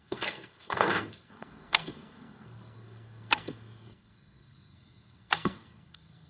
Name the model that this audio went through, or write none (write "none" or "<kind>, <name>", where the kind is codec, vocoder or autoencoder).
codec, SNAC